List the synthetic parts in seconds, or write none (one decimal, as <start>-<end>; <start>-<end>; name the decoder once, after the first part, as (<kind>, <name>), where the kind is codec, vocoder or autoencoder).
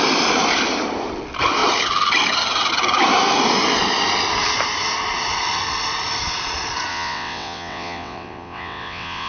6.9-9.3 (vocoder, WaveNeXt)